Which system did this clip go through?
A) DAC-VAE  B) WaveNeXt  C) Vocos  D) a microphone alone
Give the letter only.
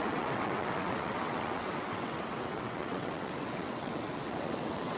B